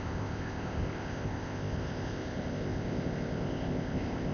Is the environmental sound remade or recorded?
remade